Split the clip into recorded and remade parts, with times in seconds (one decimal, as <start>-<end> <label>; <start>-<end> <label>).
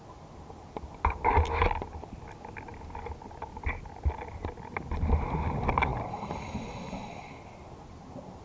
0.0-8.4 recorded